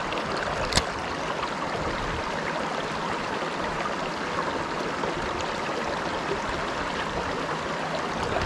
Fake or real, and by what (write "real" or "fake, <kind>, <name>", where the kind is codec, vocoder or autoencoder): real